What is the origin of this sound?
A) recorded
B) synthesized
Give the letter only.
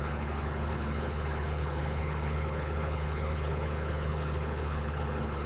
B